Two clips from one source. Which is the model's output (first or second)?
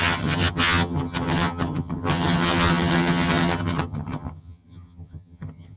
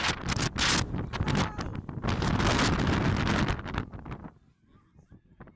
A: first